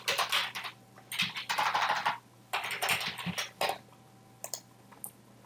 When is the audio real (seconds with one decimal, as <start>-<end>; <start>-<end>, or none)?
0.0-5.5